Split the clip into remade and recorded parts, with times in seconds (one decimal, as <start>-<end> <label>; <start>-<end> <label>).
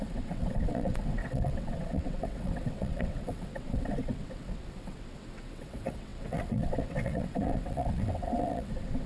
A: 0.0-9.1 remade